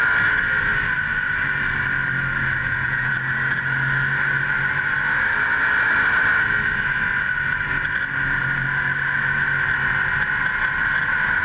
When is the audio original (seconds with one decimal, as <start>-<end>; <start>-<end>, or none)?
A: 0.0-2.6; 3.1-11.4